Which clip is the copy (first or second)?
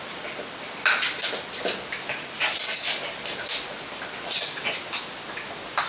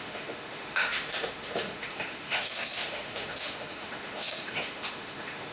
second